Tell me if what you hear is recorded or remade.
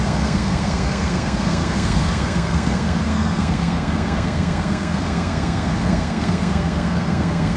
remade